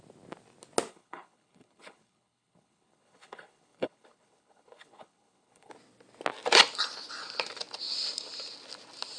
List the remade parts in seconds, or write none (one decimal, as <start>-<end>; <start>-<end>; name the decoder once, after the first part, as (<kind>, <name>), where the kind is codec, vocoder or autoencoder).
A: 0.9-5.7 (codec, HILCodec)